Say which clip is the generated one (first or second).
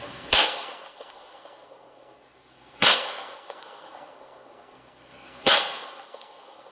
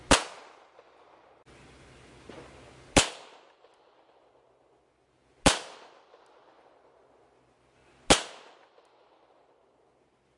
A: first